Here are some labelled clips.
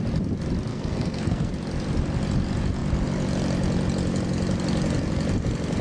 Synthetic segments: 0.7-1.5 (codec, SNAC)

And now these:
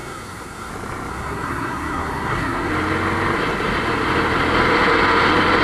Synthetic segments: 0.0-0.7 (codec, SNAC); 1.1-2.7

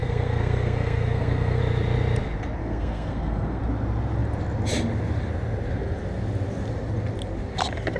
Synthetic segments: 0.0-1.6 (codec, SNAC); 2.6-3.6

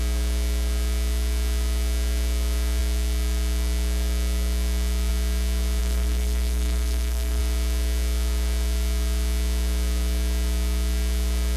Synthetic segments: 5.8-7.4 (codec, SNAC)

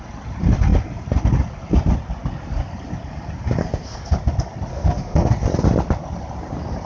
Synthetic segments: 3.6-4.1 (codec, SNAC); 4.7-5.3

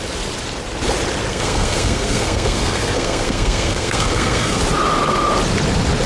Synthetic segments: 1.3-4.6 (codec, SNAC)

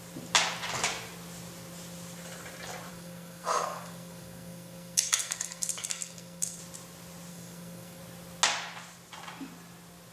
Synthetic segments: 2.9-6.6 (codec, SNAC); 7.3-8.0